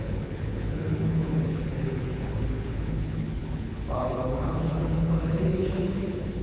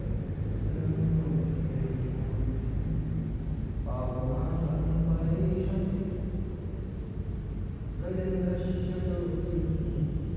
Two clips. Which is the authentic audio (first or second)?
second